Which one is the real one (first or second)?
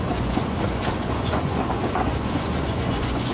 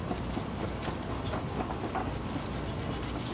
second